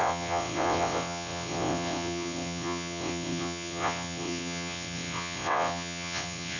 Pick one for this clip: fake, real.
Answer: fake